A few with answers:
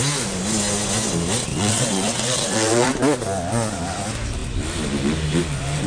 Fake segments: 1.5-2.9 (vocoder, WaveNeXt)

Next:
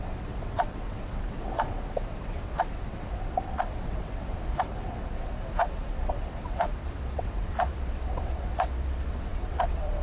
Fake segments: 0.0-10.0 (vocoder, WaveNeXt)

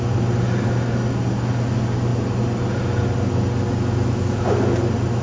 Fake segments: none

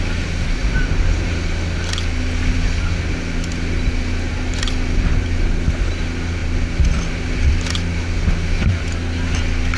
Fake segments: none